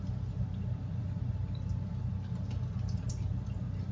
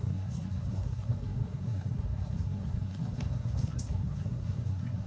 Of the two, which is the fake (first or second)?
second